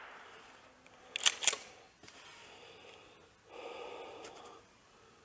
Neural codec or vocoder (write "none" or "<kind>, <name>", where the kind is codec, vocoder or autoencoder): none